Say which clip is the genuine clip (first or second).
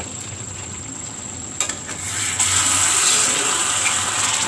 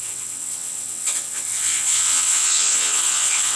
first